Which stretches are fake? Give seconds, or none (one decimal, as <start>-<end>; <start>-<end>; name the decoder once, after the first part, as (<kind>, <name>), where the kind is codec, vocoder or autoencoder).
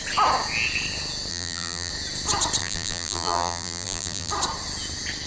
1.3-1.9 (vocoder, BigVGAN v2); 2.6-4.3